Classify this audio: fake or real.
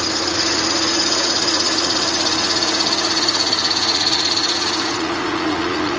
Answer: fake